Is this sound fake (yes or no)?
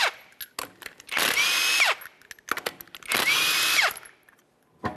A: no